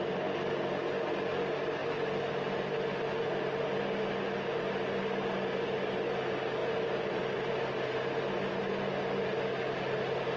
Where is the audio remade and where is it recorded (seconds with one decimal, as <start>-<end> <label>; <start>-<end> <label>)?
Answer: 0.0-10.4 recorded